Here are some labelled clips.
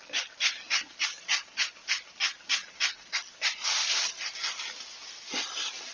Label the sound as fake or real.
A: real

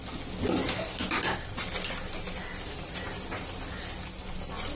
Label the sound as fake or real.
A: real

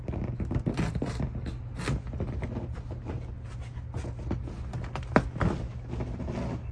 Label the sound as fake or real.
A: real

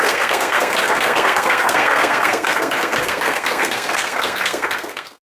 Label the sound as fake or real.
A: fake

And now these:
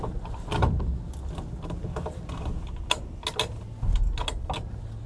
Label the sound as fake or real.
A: real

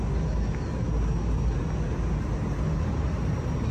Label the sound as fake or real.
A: real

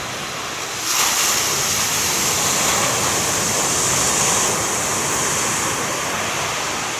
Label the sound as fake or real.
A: real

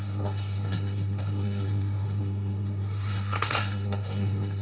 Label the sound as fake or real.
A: fake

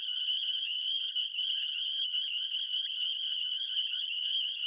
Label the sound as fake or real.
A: fake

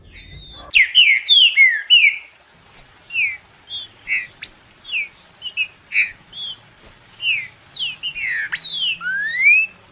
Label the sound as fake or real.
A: real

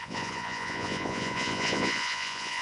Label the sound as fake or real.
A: fake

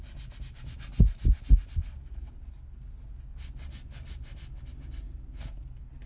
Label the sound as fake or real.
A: real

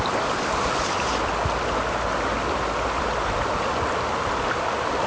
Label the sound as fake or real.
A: real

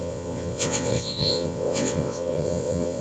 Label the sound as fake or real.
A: fake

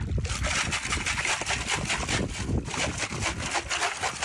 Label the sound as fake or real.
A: real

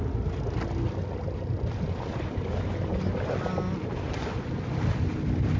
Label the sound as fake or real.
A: real